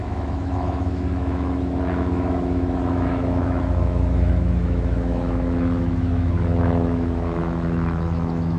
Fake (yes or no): yes